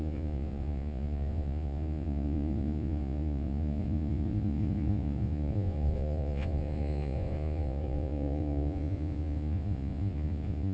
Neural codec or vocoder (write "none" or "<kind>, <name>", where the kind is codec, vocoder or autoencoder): vocoder, Vocos